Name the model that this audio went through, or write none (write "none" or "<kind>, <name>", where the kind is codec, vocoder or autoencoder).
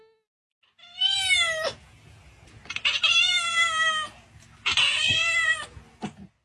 none